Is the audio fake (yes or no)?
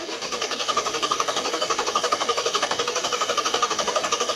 yes